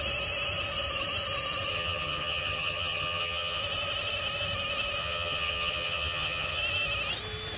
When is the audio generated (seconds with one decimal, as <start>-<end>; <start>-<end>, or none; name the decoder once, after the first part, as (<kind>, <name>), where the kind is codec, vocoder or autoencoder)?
1.7-3.6 (vocoder, HiFi-GAN); 5.0-6.6